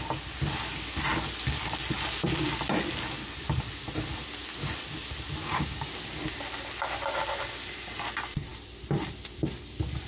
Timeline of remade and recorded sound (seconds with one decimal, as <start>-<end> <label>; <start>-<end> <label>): 0.0-5.4 recorded; 5.4-5.9 remade; 5.9-10.1 recorded